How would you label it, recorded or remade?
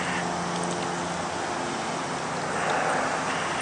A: recorded